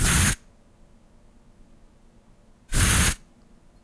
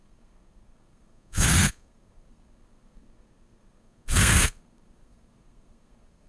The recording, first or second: first